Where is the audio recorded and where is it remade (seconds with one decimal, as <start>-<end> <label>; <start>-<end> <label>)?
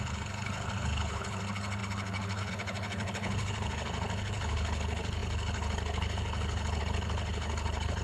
0.0-8.0 remade